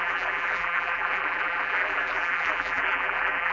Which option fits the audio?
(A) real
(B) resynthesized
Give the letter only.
B